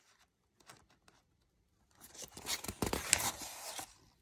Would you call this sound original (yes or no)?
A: no